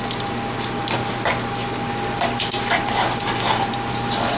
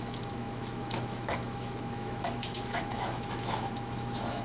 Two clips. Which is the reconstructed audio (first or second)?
second